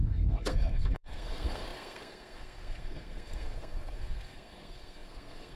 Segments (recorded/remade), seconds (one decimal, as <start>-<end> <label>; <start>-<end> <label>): 0.0-5.6 remade

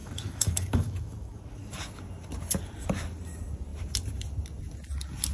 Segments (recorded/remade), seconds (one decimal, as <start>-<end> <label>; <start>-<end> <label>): 0.0-1.7 remade; 1.7-5.3 recorded

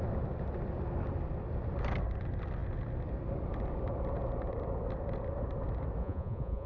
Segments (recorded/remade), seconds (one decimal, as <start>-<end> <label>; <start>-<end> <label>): 0.0-6.0 recorded; 6.0-6.7 remade

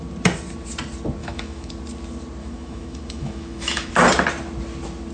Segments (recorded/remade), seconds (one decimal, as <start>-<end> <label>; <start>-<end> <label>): 0.0-1.2 recorded; 1.2-1.7 remade; 1.7-2.4 recorded; 2.4-3.9 remade; 3.9-5.1 recorded

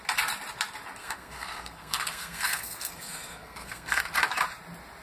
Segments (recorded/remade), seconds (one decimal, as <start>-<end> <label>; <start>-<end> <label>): 0.0-1.0 recorded; 1.0-4.0 remade; 4.0-5.0 recorded

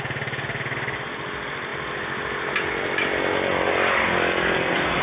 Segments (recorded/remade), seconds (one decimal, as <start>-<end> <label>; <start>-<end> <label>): 0.0-5.0 recorded

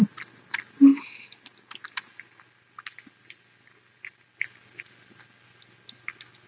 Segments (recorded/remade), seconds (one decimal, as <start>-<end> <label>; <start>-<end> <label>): 0.0-6.5 recorded

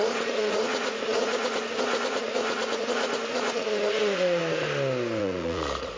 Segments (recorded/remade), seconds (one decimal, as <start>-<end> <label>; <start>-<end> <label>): 0.0-4.4 remade; 4.4-5.2 recorded; 5.2-6.0 remade